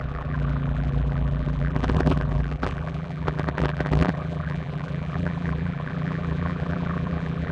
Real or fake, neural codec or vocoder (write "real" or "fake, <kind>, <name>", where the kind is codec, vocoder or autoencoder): fake, vocoder, BigVGAN v2